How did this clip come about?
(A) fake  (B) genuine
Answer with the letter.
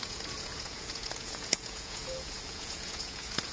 A